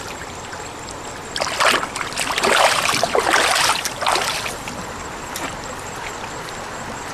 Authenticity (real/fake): real